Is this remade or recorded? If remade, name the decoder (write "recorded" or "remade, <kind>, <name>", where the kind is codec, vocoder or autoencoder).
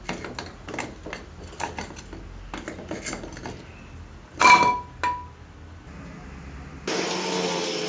recorded